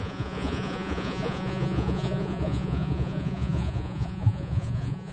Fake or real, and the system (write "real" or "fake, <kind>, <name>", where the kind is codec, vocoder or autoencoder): fake, vocoder, Vocos